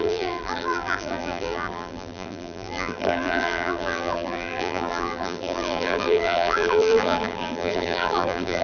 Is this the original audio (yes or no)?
no